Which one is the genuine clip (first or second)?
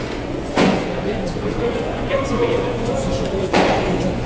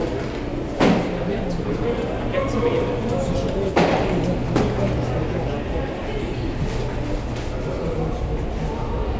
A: second